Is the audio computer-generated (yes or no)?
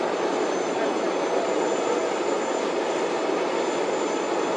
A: no